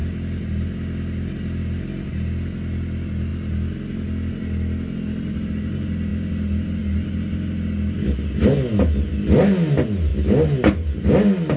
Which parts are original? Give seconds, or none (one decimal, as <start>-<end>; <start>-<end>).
0.0-11.6